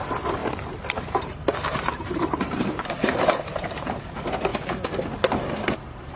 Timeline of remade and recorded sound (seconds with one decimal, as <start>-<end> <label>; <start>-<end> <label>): 0.0-0.4 recorded; 0.4-4.0 remade; 4.0-6.2 recorded